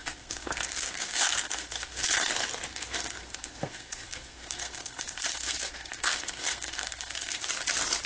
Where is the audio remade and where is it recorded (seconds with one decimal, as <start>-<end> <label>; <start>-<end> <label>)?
0.0-2.3 remade; 2.3-2.7 recorded; 2.7-7.5 remade; 7.5-8.1 recorded